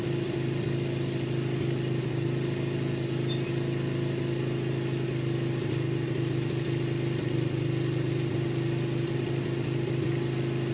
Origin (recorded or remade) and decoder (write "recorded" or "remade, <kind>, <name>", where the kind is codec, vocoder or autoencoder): recorded